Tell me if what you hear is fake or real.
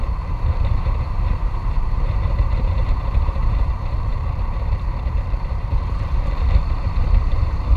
fake